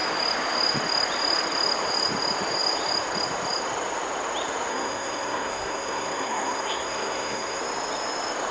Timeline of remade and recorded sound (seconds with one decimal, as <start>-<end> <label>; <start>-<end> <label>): 0.0-4.7 recorded; 4.7-7.6 remade; 7.6-8.5 recorded